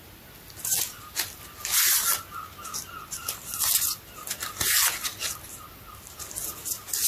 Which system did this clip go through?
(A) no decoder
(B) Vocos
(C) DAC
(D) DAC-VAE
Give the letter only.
A